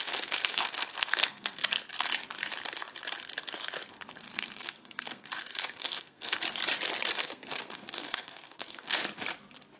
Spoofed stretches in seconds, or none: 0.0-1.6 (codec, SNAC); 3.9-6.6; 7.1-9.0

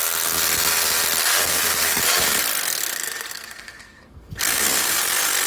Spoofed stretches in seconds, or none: 1.3-2.0 (codec, SNAC); 2.6-5.0

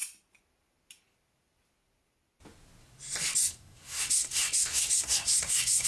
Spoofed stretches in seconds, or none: 3.5-5.9 (codec, SNAC)

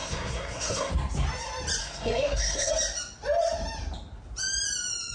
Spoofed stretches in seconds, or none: 0.0-0.9 (codec, SNAC); 1.8-2.7

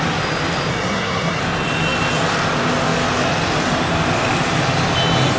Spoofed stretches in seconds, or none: 0.7-1.4 (codec, SNAC)